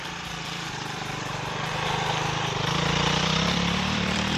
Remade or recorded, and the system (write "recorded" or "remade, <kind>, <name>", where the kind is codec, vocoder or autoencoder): remade, vocoder, BigVGAN v2